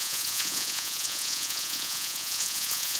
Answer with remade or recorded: remade